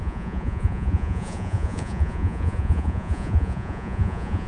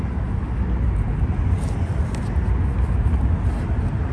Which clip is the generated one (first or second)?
first